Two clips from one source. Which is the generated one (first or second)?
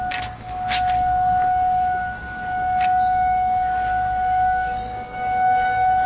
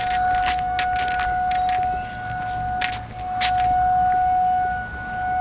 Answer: first